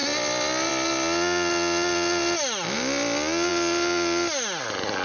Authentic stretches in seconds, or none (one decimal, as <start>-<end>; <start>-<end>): 0.0-5.0